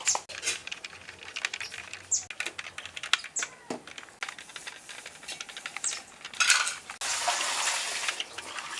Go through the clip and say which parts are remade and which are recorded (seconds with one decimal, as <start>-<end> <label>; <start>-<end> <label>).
0.0-4.5 recorded; 4.5-6.8 remade; 6.8-8.8 recorded